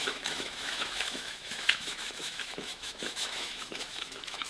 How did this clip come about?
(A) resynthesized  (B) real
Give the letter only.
A